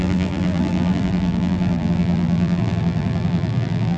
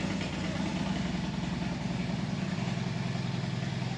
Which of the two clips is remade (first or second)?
first